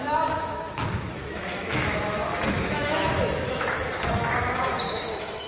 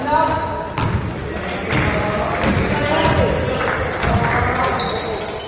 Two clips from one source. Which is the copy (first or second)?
first